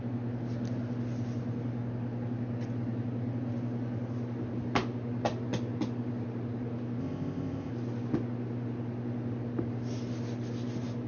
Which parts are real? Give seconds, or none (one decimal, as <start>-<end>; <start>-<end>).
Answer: 0.0-7.0; 7.7-11.1